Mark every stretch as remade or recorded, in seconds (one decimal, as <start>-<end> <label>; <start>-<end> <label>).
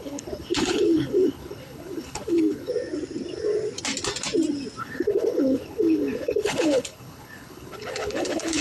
0.0-2.7 remade; 2.7-4.8 recorded; 4.8-8.6 remade